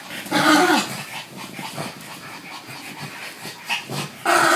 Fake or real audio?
real